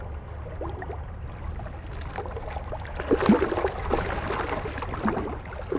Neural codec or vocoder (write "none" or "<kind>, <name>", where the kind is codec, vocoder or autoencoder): none